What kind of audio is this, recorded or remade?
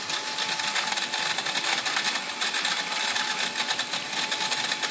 recorded